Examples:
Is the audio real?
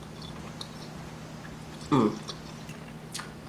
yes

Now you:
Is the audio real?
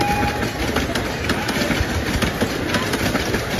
yes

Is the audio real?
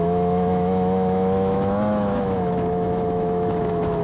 no